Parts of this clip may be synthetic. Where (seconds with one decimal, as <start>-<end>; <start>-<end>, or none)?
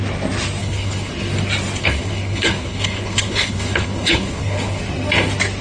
0.6-1.1; 1.8-4.8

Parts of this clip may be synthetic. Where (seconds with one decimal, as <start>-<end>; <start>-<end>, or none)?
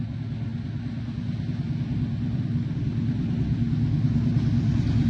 none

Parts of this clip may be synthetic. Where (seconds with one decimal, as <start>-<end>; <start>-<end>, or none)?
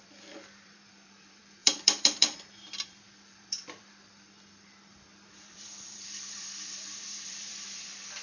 0.0-8.2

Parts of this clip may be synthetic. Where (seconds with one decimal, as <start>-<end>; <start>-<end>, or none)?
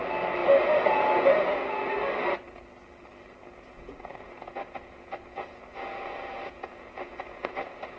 0.4-1.9; 3.4-8.0